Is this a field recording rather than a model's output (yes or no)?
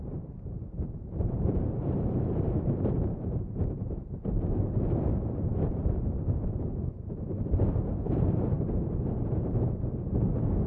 no